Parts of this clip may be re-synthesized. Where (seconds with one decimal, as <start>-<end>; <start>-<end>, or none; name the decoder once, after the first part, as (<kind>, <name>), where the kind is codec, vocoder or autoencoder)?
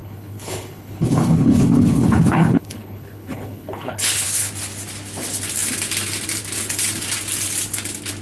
0.0-4.5 (codec, HILCodec)